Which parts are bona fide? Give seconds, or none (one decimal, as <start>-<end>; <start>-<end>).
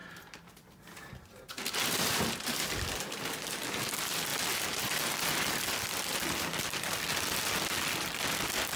2.2-8.8